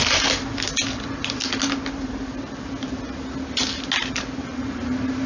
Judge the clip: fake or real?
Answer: real